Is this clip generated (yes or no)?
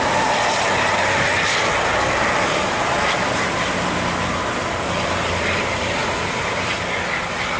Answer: no